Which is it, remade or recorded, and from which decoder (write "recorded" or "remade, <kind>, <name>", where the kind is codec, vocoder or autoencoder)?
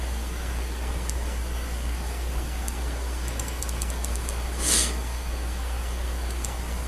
remade, codec, SNAC